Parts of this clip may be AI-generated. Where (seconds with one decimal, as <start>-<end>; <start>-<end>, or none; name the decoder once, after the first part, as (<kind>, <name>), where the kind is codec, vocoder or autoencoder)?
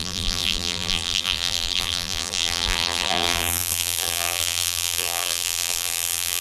0.0-6.4 (vocoder, BigVGAN v2)